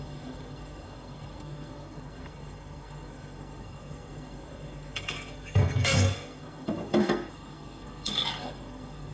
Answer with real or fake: fake